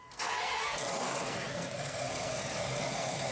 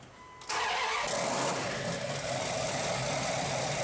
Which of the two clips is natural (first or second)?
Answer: second